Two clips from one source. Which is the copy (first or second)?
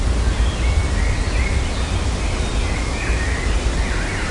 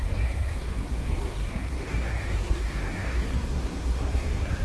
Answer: second